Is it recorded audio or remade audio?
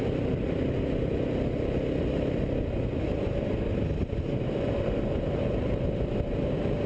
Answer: recorded